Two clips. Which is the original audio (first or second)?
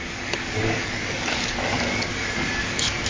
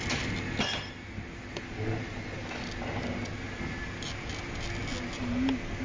second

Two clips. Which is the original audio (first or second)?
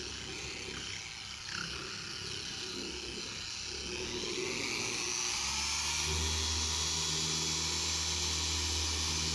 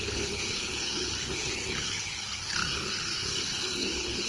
first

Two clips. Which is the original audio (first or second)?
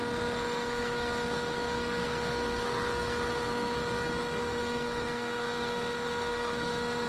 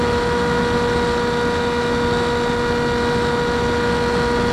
second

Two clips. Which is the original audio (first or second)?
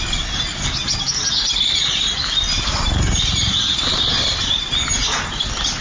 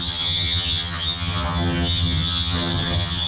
first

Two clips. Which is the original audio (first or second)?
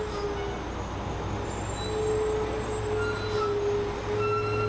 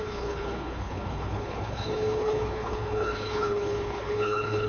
first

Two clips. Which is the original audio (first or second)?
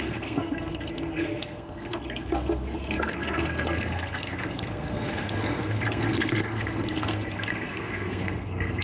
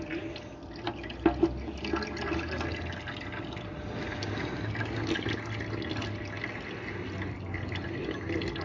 second